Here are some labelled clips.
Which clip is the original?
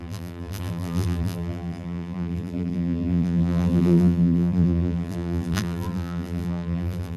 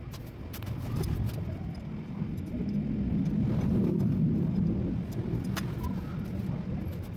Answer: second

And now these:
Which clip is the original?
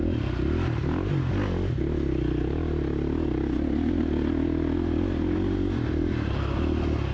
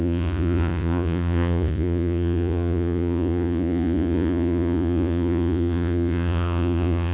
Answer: first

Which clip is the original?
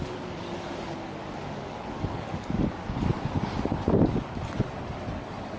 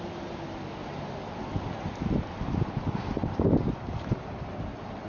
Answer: second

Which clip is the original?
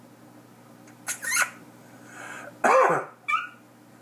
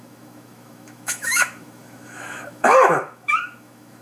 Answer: first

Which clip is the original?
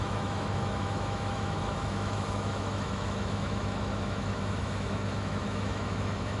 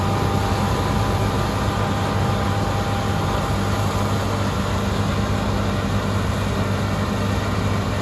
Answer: second